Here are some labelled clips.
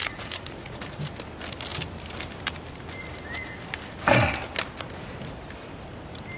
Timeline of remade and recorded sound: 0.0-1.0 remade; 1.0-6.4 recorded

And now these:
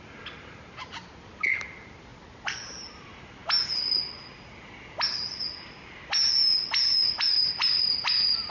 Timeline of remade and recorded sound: 0.0-8.5 recorded

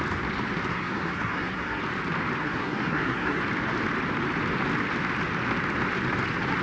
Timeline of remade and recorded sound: 0.0-0.7 recorded; 0.7-1.8 remade; 1.8-2.4 recorded; 2.4-3.4 remade; 3.4-6.6 recorded

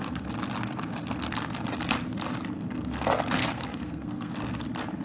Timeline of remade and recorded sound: 0.0-3.4 recorded; 3.4-4.3 remade; 4.3-5.0 recorded

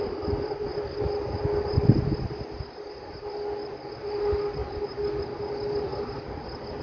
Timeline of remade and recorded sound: 0.0-6.8 recorded

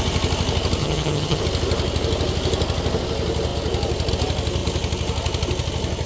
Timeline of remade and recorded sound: 0.0-0.8 recorded; 0.8-1.4 remade; 1.4-6.1 recorded

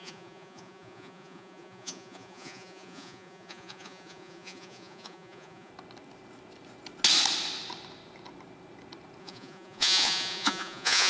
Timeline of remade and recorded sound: 0.0-5.7 remade; 5.7-9.2 recorded; 9.2-11.1 remade

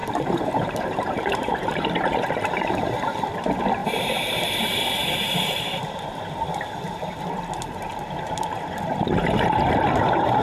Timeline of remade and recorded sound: 0.0-2.3 remade; 2.3-3.8 recorded; 3.8-5.7 remade; 5.7-10.4 recorded